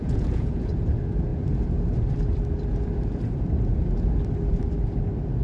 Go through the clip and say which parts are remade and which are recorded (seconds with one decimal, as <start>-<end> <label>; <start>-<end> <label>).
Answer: 0.0-0.7 remade; 0.7-5.4 recorded